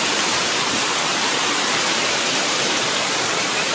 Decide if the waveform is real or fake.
fake